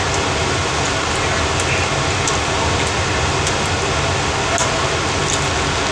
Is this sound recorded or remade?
recorded